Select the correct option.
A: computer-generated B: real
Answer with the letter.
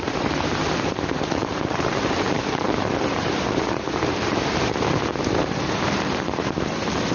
A